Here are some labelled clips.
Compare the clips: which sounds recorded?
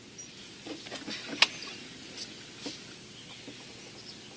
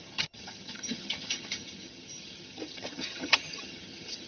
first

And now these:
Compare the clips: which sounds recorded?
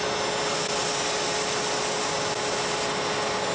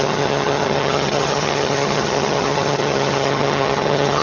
first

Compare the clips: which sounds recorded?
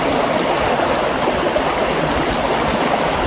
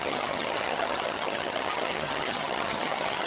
first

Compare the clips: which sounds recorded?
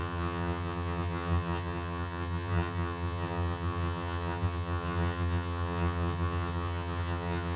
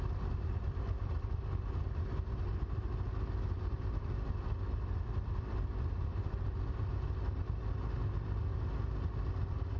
second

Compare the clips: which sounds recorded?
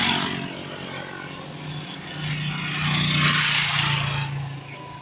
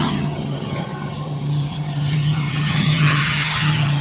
first